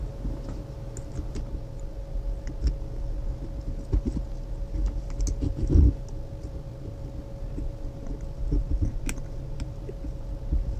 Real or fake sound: real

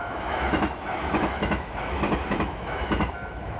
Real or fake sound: fake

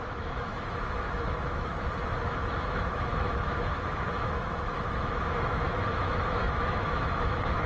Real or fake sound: fake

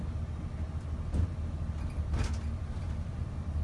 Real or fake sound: real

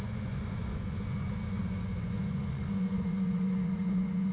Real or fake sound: fake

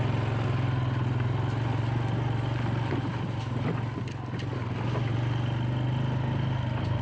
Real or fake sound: real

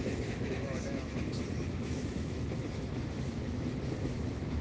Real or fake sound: fake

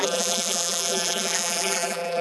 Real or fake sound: fake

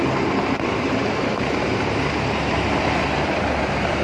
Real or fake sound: fake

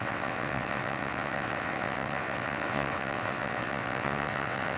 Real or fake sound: fake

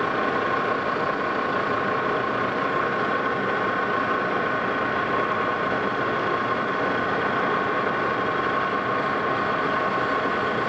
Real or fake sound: real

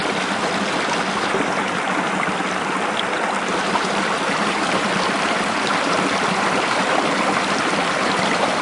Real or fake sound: fake